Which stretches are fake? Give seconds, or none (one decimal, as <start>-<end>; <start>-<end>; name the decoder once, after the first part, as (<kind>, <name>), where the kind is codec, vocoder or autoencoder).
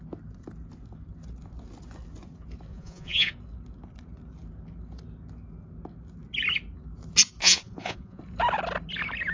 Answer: 2.7-3.3 (vocoder, Vocos); 7.4-8.2